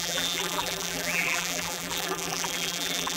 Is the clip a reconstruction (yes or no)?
yes